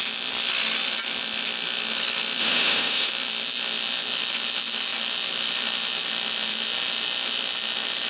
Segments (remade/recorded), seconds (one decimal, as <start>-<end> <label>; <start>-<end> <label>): 0.0-2.4 recorded; 2.4-3.1 remade; 3.1-8.1 recorded